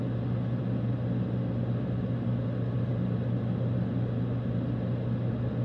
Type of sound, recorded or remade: recorded